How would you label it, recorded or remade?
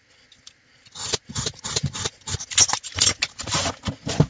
recorded